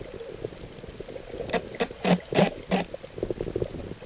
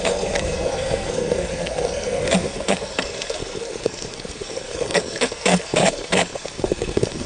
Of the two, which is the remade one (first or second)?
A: second